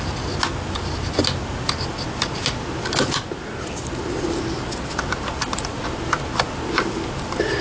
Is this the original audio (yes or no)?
yes